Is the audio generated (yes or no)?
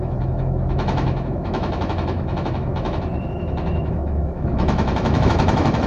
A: yes